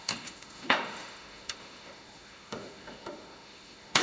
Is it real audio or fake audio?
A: fake